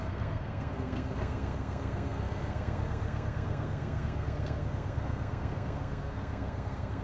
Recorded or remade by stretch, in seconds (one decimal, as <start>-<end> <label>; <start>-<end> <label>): 0.0-7.0 remade

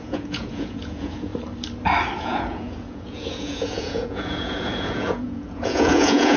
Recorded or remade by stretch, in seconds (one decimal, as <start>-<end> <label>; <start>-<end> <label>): 0.0-1.3 remade; 1.3-2.2 recorded; 2.2-6.4 remade

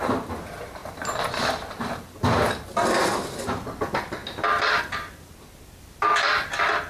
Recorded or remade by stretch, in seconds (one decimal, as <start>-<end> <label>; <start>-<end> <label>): 0.0-6.9 recorded